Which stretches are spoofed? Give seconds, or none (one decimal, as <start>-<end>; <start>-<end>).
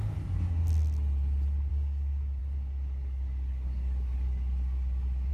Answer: 0.0-0.6; 1.7-5.3